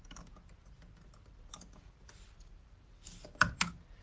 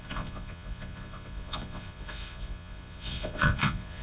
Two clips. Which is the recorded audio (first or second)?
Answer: first